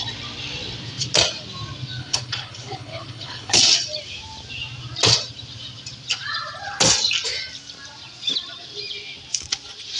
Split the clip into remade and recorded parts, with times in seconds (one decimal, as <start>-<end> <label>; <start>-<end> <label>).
0.0-2.0 recorded; 2.0-3.6 remade; 3.6-10.0 recorded